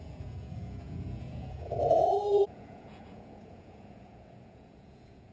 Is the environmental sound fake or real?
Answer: fake